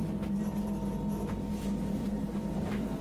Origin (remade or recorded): recorded